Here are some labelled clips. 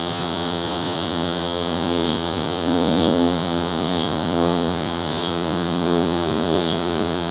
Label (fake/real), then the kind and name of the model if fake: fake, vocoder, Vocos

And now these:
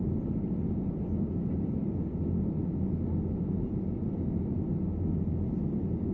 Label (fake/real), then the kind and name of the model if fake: real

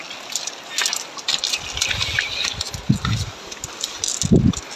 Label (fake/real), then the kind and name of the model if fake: real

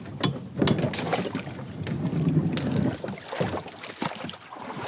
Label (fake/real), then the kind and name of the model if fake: real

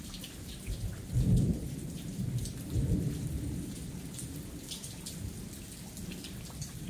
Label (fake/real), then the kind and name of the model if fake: fake, vocoder, BigVGAN v2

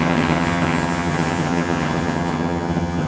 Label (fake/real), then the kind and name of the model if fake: fake, vocoder, HiFi-GAN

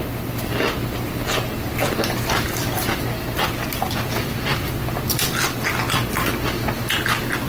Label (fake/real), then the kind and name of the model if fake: real